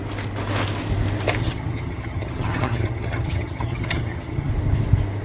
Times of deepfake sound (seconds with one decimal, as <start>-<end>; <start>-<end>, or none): 1.4-4.5